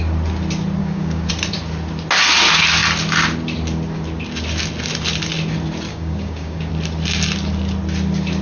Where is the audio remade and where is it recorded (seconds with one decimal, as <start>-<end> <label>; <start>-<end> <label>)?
0.0-0.8 recorded; 0.8-1.3 remade; 1.3-5.9 recorded; 5.9-6.7 remade; 6.7-8.4 recorded